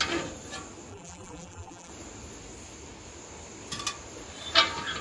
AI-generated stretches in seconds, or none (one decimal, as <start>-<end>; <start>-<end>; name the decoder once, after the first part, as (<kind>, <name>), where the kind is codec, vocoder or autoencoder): 0.9-1.9 (vocoder, BigVGAN v2)